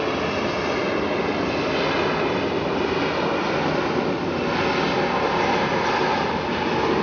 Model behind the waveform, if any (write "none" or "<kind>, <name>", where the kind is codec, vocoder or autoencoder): none